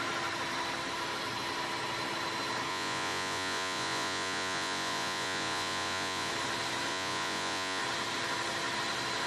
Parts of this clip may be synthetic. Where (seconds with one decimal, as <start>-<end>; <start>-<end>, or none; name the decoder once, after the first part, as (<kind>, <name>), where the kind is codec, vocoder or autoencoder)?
2.7-6.3 (vocoder, Vocos); 6.9-7.8